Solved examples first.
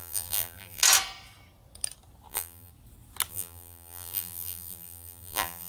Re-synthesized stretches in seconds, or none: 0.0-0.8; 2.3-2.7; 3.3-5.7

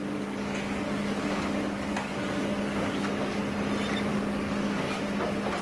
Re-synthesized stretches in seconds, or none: 0.0-3.4; 4.1-5.0

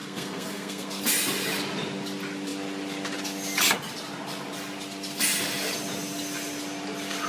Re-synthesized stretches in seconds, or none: 0.0-1.0